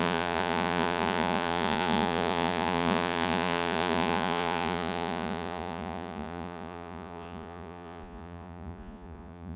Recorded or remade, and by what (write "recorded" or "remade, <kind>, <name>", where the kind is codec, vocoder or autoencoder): remade, vocoder, Vocos